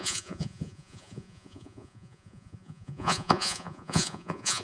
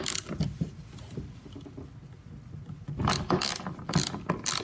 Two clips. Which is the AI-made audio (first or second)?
first